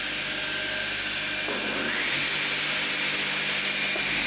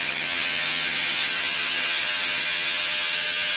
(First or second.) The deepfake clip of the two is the second